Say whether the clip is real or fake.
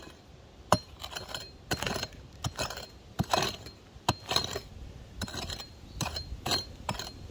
real